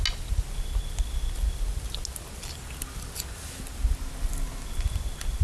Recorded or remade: recorded